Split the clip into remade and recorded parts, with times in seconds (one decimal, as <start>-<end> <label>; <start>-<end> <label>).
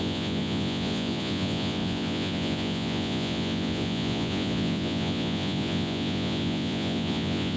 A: 0.0-7.6 remade